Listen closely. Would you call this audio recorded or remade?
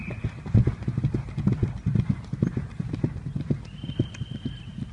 recorded